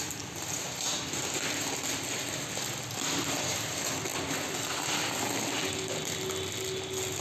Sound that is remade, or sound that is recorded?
recorded